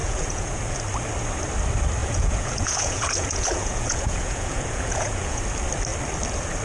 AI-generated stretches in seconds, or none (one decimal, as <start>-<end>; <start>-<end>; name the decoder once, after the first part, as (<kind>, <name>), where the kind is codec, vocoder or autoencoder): 0.0-0.6 (vocoder, Vocos); 2.0-5.4